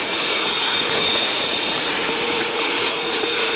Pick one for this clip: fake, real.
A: fake